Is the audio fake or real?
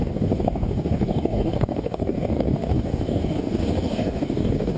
fake